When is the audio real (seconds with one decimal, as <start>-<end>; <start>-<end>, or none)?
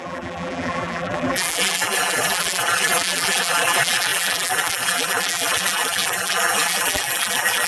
none